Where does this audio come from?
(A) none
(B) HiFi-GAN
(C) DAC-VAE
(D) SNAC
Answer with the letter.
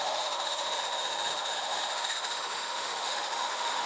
C